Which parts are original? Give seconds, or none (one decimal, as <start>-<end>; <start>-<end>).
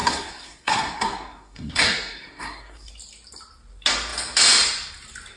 2.9-5.4